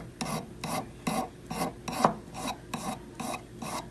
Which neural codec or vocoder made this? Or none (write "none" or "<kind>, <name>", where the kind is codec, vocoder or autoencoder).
none